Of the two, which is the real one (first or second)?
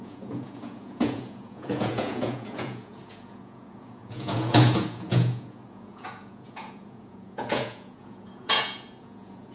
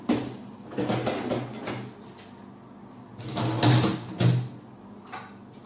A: second